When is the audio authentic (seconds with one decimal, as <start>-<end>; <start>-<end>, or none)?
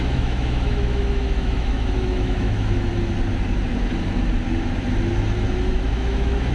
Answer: 2.9-5.8